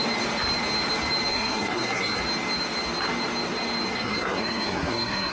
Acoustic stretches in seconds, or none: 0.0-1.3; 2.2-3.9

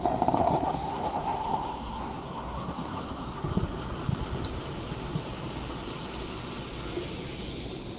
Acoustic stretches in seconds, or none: 0.0-0.4; 3.5-8.0

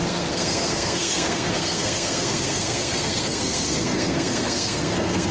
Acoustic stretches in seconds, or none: none